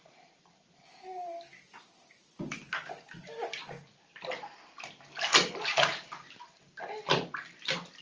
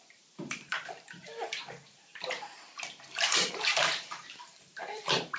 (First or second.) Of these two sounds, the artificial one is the second